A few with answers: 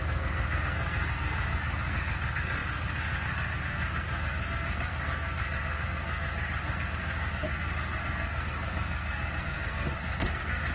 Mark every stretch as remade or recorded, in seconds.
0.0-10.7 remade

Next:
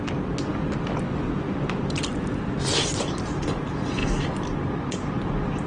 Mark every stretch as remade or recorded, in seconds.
0.0-5.7 recorded